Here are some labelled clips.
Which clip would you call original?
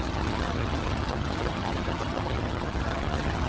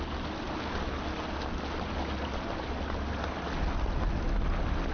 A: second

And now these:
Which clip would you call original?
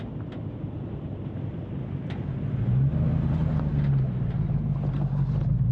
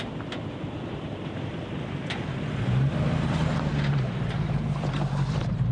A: first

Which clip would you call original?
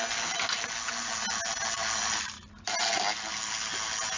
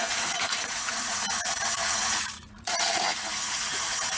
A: first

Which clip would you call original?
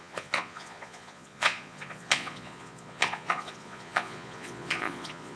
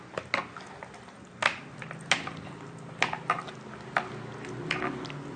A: second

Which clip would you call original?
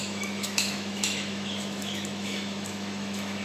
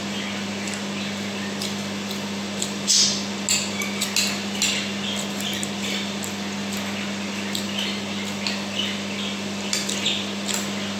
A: second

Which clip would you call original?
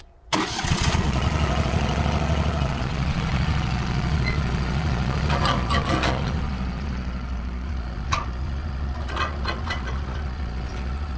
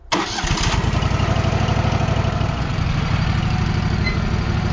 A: second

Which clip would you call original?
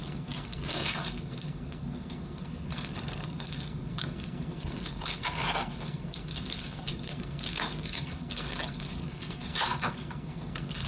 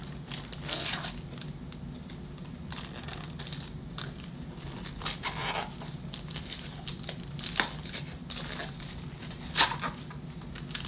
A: second